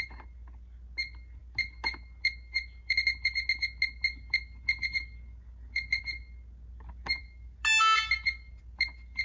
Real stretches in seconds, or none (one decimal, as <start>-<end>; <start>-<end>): 0.0-9.2